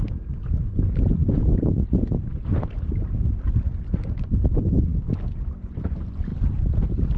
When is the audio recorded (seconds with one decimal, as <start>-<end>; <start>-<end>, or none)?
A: 0.0-7.2